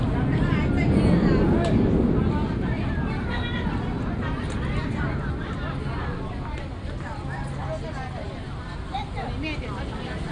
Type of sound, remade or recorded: recorded